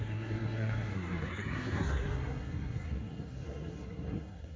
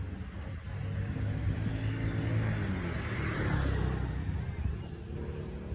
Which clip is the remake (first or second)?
first